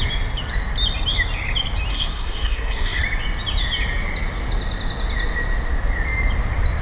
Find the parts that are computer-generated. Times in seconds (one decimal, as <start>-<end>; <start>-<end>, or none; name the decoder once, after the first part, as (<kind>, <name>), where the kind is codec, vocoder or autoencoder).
1.9-3.0 (codec, SNAC)